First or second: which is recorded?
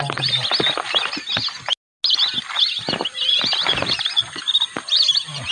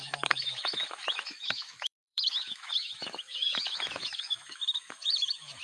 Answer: first